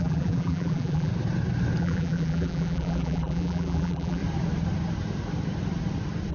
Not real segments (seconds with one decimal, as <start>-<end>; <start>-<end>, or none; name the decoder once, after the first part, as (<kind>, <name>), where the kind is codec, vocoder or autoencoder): 0.0-1.1 (vocoder, BigVGAN v2); 1.8-4.2